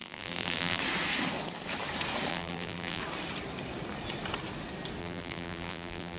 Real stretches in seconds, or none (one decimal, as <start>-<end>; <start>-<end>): 0.8-2.3; 3.0-5.0